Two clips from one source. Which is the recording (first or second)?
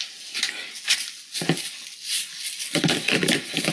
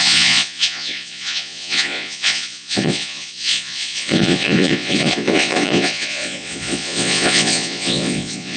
first